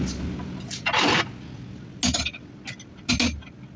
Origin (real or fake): real